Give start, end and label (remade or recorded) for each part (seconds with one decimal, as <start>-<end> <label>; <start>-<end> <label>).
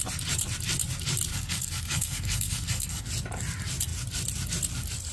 0.0-1.3 recorded; 1.3-3.0 remade; 3.0-5.1 recorded